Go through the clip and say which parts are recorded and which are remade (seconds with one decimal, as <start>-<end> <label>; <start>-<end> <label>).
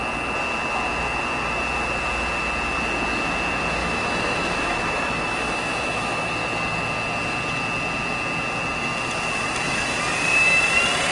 0.0-3.8 recorded; 3.8-6.3 remade; 6.3-11.1 recorded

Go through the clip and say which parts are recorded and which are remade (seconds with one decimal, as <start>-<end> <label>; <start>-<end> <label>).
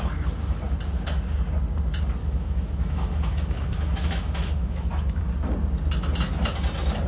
0.0-2.2 recorded; 2.2-5.2 remade; 5.2-7.1 recorded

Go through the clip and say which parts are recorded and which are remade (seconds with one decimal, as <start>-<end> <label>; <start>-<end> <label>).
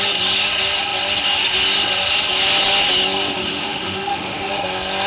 0.0-3.4 recorded; 3.4-4.5 remade; 4.5-5.1 recorded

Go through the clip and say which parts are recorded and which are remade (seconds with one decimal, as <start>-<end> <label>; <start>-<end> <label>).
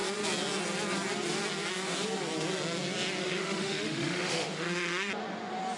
0.0-3.2 recorded; 3.2-5.1 remade; 5.1-5.8 recorded